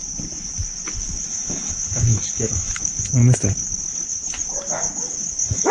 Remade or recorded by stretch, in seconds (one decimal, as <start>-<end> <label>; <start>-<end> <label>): 0.0-1.0 recorded; 1.0-3.2 remade; 3.2-4.8 recorded; 4.8-5.7 remade